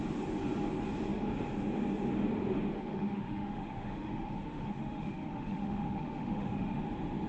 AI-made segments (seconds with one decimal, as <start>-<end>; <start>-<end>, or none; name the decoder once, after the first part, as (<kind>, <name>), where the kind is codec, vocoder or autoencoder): 2.7-6.8 (autoencoder, DAC-VAE)